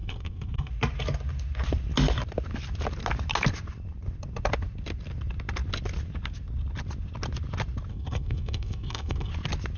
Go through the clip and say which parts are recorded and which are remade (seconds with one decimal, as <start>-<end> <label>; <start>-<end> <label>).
0.0-0.7 remade; 0.7-7.9 recorded; 7.9-9.3 remade; 9.3-9.8 recorded

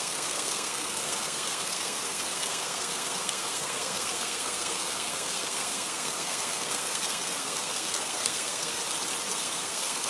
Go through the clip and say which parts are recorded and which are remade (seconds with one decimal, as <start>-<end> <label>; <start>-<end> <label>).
0.0-8.8 remade; 8.8-9.3 recorded; 9.3-10.1 remade

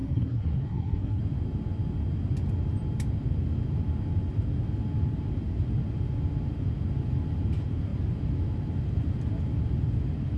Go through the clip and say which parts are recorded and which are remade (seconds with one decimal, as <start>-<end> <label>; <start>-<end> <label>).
0.0-1.2 remade; 1.2-10.4 recorded

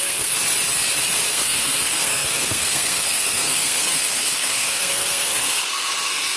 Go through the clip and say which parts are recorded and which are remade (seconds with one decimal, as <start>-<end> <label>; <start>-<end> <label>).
0.0-0.4 remade; 0.4-1.3 recorded; 1.3-6.4 remade